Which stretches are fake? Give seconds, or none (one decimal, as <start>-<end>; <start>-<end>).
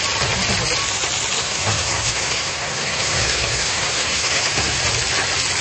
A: 1.4-4.8